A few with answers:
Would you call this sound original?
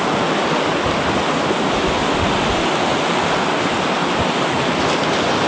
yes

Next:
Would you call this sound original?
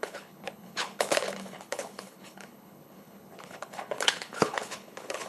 no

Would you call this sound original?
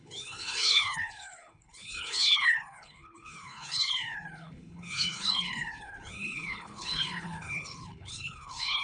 no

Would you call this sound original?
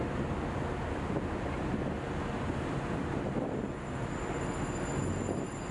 yes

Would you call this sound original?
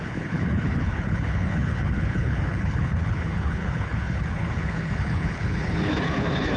no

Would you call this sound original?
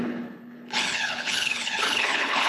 no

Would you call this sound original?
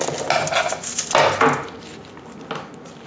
yes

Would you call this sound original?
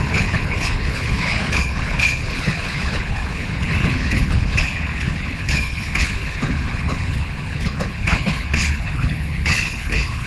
no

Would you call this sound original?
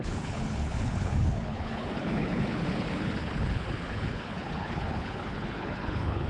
no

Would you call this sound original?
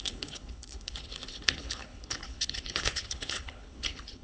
no